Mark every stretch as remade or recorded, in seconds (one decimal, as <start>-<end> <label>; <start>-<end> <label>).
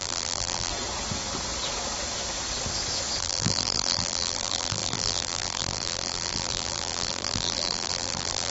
0.0-0.7 remade; 0.7-3.2 recorded; 3.2-8.5 remade